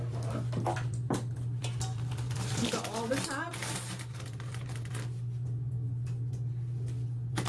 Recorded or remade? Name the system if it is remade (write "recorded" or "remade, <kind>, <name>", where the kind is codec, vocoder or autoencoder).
recorded